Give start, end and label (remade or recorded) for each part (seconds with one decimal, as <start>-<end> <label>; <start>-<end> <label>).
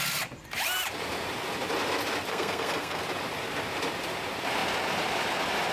0.0-2.3 recorded; 2.3-3.0 remade; 3.0-5.7 recorded